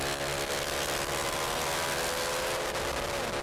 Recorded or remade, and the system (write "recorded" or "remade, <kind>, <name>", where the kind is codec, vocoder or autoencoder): recorded